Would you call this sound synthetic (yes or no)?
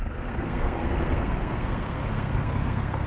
yes